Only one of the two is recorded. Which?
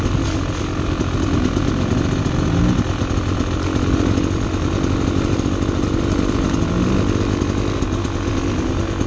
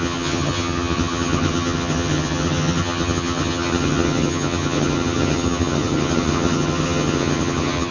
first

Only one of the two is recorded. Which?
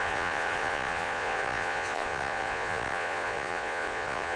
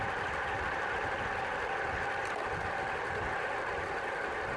second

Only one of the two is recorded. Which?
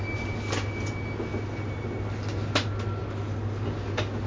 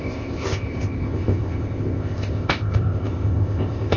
first